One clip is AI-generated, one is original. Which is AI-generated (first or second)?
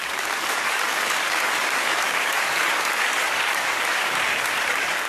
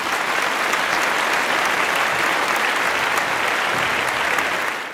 first